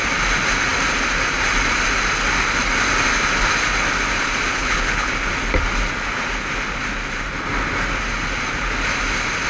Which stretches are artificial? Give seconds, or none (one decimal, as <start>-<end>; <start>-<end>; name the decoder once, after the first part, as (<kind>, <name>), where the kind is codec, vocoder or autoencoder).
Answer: 4.5-5.1 (codec, HILCodec)

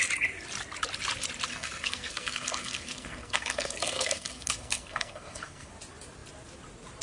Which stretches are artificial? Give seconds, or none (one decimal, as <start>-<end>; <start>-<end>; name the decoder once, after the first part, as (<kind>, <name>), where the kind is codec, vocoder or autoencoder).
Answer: 1.5-5.7 (codec, SNAC)

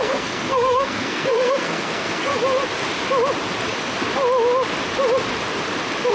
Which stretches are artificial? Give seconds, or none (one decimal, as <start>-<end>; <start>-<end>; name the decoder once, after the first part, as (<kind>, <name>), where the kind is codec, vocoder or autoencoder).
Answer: 0.0-2.3 (codec, SNAC)

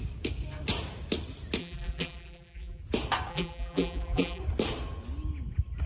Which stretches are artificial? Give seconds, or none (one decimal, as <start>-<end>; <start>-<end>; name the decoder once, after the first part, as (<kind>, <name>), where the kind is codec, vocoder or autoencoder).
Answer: 1.6-2.8 (vocoder, BigVGAN v2); 3.3-4.4

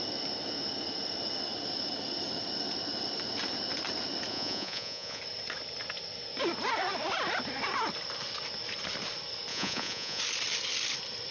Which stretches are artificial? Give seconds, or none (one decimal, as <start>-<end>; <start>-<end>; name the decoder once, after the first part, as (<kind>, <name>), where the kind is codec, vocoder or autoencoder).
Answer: 4.3-5.2 (vocoder, Vocos); 9.5-10.2